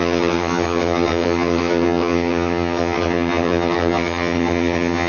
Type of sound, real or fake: fake